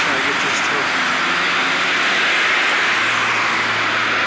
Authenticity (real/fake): real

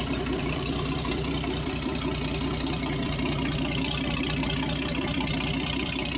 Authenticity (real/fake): fake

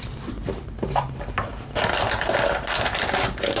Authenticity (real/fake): real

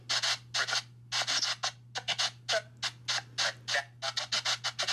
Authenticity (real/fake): real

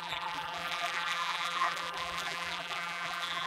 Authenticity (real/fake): fake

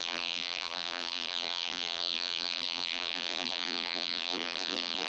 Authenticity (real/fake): fake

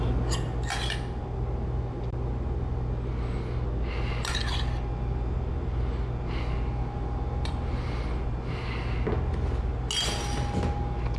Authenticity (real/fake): real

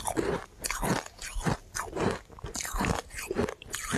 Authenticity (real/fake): real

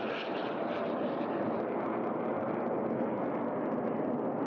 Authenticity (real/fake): fake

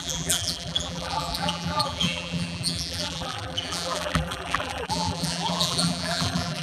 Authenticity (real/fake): fake